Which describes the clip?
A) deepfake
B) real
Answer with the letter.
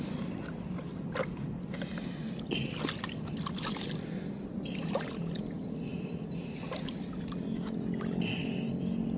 B